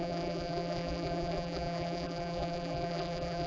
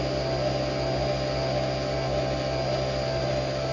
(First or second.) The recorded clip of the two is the second